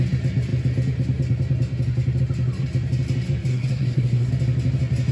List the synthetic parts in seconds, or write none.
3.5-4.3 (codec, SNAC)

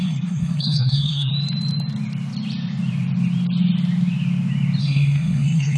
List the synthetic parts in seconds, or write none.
0.0-1.3 (codec, SNAC); 4.8-5.8